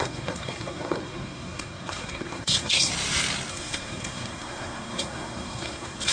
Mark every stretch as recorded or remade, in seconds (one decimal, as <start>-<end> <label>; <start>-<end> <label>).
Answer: 0.0-2.9 remade; 2.9-3.5 recorded; 3.5-6.1 remade